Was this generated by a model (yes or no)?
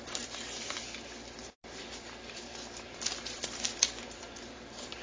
yes